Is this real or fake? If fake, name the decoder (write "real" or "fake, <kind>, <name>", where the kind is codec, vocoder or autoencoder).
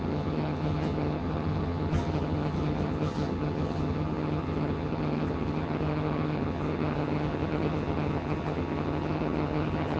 fake, vocoder, HiFi-GAN